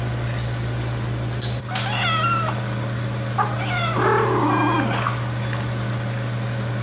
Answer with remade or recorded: recorded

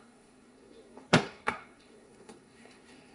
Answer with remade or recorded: remade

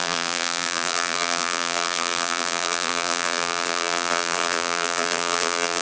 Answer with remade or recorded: remade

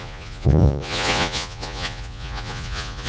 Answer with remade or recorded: remade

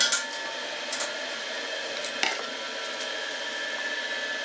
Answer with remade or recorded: recorded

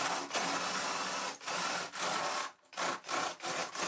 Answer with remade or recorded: recorded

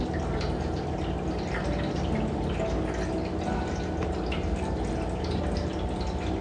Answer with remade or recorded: recorded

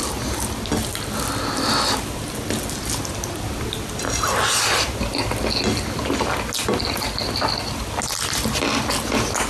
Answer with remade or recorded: recorded